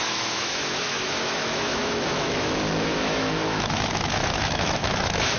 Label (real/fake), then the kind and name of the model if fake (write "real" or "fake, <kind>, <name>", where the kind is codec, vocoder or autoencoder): fake, autoencoder, DAC-VAE